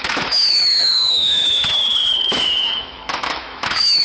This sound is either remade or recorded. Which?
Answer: remade